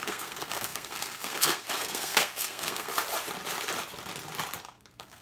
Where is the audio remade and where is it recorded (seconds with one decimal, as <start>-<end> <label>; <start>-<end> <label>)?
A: 0.0-2.9 remade; 2.9-4.6 recorded; 4.6-5.2 remade